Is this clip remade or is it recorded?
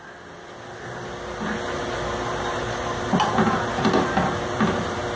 recorded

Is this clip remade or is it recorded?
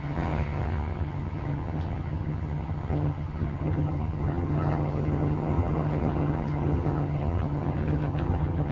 remade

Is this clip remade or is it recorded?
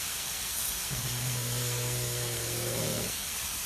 remade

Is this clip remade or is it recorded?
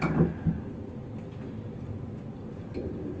recorded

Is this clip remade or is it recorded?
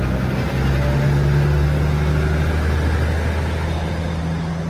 recorded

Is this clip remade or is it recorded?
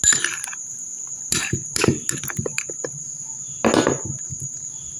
recorded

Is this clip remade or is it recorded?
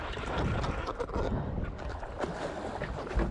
recorded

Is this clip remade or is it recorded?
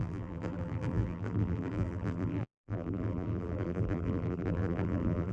remade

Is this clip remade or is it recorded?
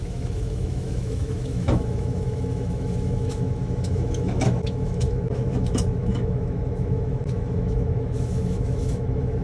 remade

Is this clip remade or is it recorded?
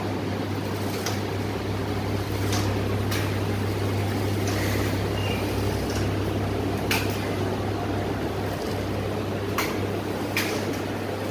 recorded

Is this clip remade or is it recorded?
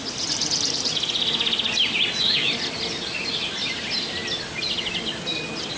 recorded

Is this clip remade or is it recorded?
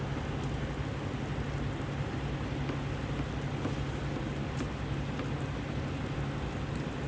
recorded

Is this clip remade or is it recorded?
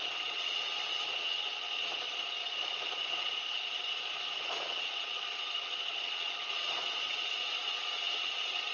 remade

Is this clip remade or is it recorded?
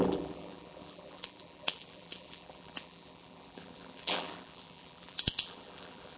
remade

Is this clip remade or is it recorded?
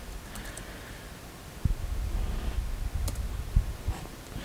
recorded